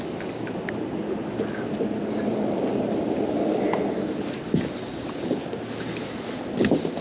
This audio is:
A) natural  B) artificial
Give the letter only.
A